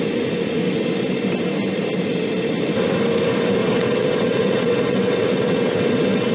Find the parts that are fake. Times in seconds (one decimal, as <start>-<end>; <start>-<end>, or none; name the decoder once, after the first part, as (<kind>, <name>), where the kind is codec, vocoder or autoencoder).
3.6-6.3 (vocoder, WaveNeXt)